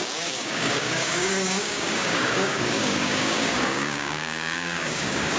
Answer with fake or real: fake